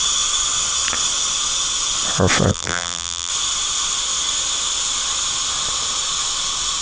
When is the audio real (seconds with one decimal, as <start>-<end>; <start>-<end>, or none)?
0.0-2.5; 3.3-6.8